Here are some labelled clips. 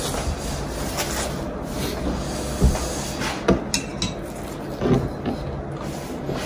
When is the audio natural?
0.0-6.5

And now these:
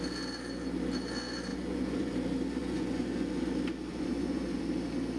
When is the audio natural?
0.0-1.5; 2.1-2.6; 3.5-3.9; 4.6-5.2

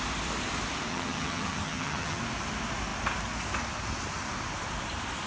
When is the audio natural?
0.0-0.9; 2.2-5.3

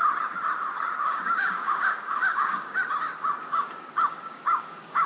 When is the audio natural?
0.0-1.0; 2.8-3.4

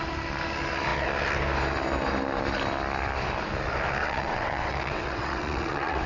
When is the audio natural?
0.0-4.0

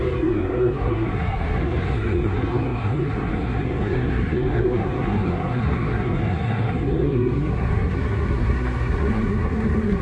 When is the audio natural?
none